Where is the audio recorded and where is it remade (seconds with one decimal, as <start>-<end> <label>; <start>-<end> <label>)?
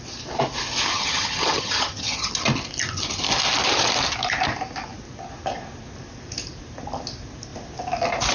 0.0-0.9 recorded; 0.9-2.3 remade; 2.3-8.3 recorded